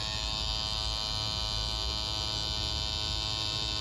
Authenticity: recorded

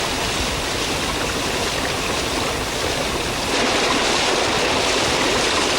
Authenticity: recorded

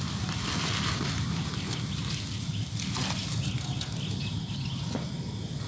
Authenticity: recorded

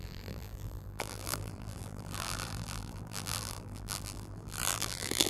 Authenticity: remade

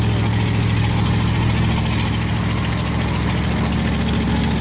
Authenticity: recorded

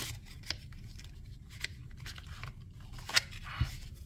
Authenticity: recorded